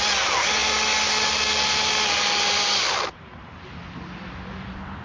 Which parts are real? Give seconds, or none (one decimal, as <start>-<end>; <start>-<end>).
0.0-5.0